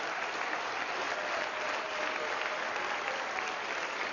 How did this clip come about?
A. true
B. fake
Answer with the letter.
A